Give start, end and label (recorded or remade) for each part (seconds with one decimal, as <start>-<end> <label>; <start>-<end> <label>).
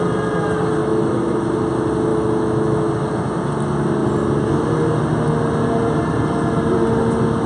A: 0.0-0.8 recorded; 0.8-1.4 remade; 1.4-2.1 recorded; 2.1-2.9 remade; 2.9-7.5 recorded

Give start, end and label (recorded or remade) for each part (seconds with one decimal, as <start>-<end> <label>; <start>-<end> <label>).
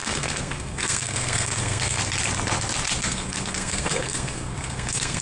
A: 0.0-2.0 remade; 2.0-3.0 recorded; 3.0-5.2 remade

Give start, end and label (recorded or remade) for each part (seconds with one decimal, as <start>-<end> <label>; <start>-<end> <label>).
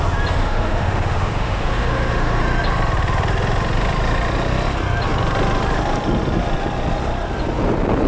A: 0.0-0.4 recorded; 0.4-2.4 remade; 2.4-8.1 recorded